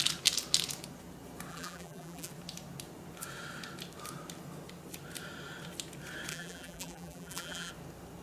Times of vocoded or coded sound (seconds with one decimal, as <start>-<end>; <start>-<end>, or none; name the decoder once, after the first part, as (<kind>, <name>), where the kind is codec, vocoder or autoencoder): 1.5-2.3 (vocoder, BigVGAN v2); 6.3-7.7